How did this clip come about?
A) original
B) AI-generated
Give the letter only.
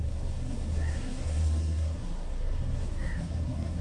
B